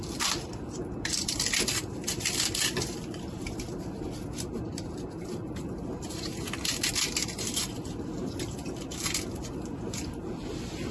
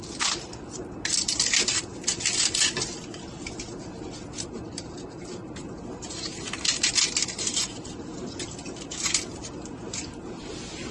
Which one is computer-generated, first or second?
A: first